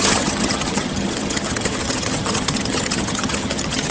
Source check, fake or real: fake